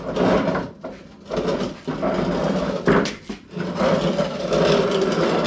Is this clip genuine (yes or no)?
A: yes